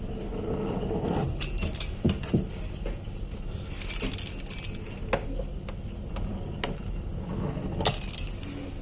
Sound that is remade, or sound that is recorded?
recorded